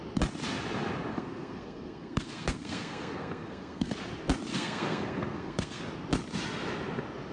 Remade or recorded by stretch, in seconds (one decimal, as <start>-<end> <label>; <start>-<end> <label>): 0.0-1.1 recorded; 1.1-3.9 remade; 3.9-4.5 recorded; 4.5-5.8 remade; 5.8-7.3 recorded